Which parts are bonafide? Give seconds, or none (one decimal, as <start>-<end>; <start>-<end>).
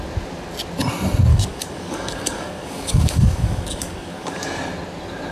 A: 0.0-1.3; 4.4-5.3